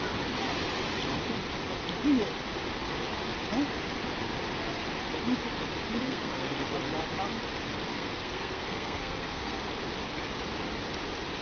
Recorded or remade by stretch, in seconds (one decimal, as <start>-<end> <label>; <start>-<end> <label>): 0.0-6.0 recorded; 6.0-6.7 remade; 6.7-7.9 recorded; 7.9-9.6 remade; 9.6-11.4 recorded